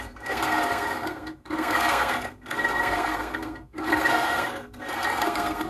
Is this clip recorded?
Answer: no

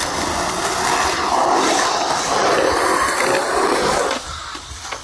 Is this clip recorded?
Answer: yes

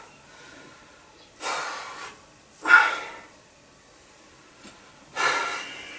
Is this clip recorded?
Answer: yes